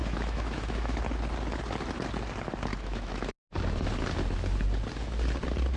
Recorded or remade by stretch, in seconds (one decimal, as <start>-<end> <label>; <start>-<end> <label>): 0.0-1.0 remade; 1.0-2.7 recorded; 2.7-3.3 remade; 3.3-5.8 recorded